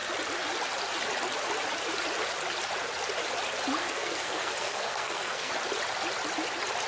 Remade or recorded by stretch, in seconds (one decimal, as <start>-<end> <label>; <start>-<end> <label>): 0.0-3.8 recorded; 3.8-5.5 remade; 5.5-6.9 recorded